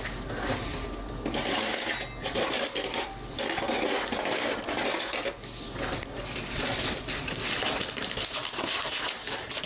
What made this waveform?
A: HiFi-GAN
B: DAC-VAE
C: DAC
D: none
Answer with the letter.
D